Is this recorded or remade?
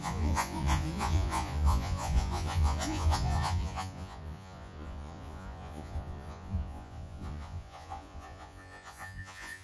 remade